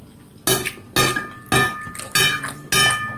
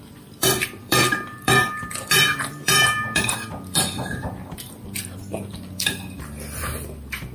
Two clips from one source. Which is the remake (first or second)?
second